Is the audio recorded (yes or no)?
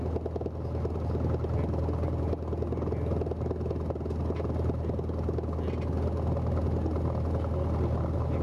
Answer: yes